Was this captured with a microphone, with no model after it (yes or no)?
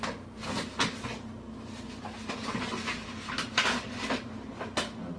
yes